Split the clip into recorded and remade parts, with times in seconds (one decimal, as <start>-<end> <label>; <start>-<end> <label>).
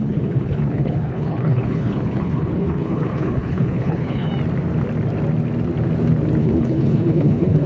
0.0-4.3 remade; 4.3-6.4 recorded; 6.4-7.7 remade